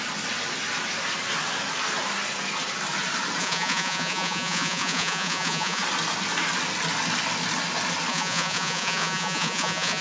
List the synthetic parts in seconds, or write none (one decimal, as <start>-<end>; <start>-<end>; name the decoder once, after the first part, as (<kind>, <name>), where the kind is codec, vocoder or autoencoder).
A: 3.4-5.8 (vocoder, Vocos); 8.1-10.0